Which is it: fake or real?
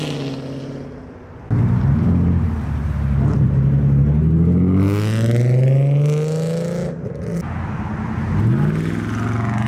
real